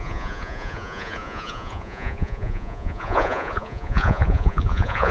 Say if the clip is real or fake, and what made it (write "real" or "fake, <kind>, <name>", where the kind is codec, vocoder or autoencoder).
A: fake, vocoder, Vocos